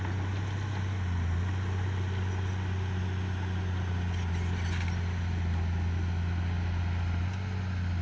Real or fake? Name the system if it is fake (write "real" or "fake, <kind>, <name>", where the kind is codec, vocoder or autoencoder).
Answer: real